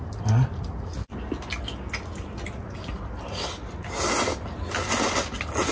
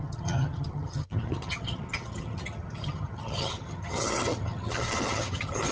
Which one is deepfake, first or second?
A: second